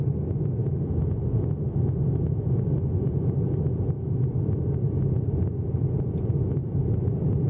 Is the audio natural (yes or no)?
yes